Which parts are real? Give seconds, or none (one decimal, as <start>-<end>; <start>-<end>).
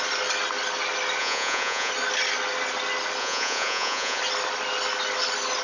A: 0.0-1.2; 1.9-3.2; 4.2-5.6